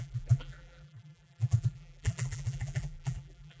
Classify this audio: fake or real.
fake